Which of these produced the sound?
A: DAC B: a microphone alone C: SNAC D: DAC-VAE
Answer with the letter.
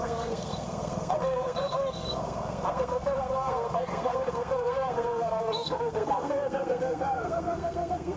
C